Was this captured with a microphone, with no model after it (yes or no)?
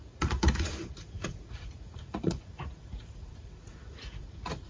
no